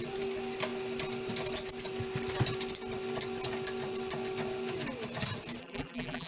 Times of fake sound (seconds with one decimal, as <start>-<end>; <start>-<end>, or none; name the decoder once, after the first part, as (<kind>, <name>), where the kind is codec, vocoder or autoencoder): 5.6-6.3 (vocoder, BigVGAN v2)